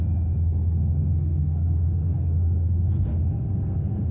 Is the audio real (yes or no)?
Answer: no